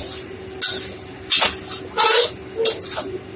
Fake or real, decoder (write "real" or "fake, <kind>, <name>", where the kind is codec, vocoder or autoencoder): real